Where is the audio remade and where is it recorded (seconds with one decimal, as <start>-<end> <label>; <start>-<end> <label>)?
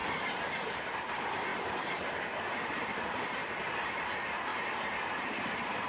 0.0-3.4 remade; 3.4-3.9 recorded; 3.9-4.5 remade; 4.5-5.2 recorded; 5.2-5.9 remade